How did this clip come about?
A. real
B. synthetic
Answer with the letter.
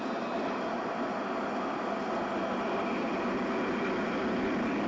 A